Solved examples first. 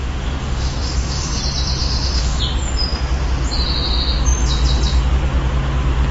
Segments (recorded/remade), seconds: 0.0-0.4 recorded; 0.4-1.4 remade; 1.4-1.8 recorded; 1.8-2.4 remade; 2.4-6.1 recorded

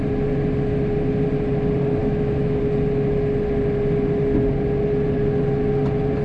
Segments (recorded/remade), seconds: 0.0-2.0 recorded; 2.0-2.6 remade; 2.6-6.2 recorded

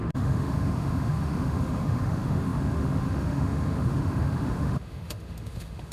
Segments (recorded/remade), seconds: 0.0-5.9 remade

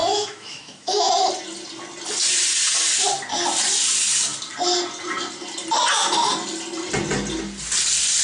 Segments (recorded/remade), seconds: 0.0-1.1 remade; 1.1-8.2 recorded

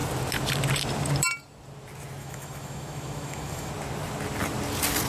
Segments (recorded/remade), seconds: 0.0-2.2 recorded; 2.2-3.7 remade; 3.7-5.1 recorded

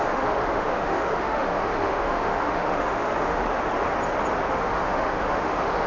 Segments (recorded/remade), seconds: 0.0-3.4 remade; 3.4-4.5 recorded; 4.5-5.9 remade

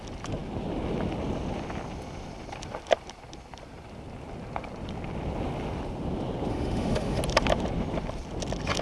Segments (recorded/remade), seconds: 0.0-6.5 recorded; 6.5-7.2 remade; 7.2-8.8 recorded

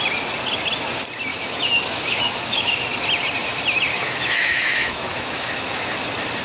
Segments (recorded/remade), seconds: 0.0-1.3 recorded; 1.3-2.8 remade; 2.8-3.9 recorded; 3.9-5.9 remade; 5.9-6.4 recorded